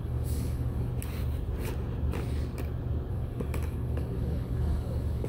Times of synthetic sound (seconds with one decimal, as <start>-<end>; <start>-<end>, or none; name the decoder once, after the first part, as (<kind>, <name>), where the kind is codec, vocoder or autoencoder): 0.0-0.9 (codec, DAC); 3.1-5.3

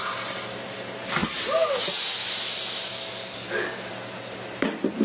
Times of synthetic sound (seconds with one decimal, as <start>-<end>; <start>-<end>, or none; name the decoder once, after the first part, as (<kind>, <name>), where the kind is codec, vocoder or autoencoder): 2.9-3.9 (codec, DAC)

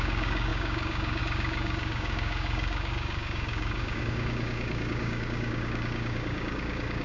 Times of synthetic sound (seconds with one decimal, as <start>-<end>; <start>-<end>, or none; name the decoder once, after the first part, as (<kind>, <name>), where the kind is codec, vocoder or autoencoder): 0.0-7.0 (codec, DAC)

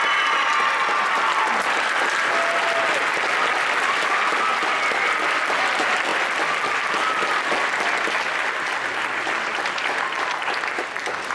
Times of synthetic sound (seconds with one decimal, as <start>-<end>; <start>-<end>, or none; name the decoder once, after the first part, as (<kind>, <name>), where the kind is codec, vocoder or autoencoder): none

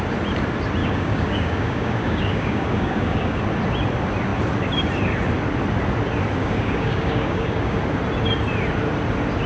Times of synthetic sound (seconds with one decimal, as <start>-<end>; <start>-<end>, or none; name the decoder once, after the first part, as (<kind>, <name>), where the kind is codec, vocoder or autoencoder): 0.8-3.4 (codec, DAC); 6.4-7.8

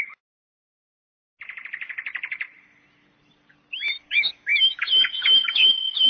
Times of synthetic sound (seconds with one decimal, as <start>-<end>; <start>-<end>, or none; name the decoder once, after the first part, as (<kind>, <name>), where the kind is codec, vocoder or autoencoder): 0.0-1.3 (codec, DAC); 4.0-6.1

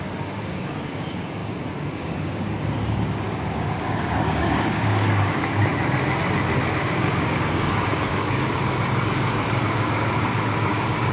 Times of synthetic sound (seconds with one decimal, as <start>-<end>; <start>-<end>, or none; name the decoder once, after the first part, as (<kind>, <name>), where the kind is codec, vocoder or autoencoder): 0.0-5.7 (codec, DAC); 6.8-11.1

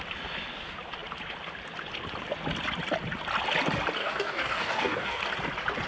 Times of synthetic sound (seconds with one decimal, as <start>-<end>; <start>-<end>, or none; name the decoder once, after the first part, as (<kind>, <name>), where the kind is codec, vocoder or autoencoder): 4.0-5.2 (codec, DAC)